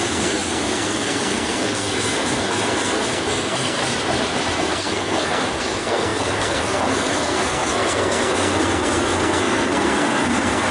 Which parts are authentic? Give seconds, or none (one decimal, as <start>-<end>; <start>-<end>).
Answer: 3.8-4.6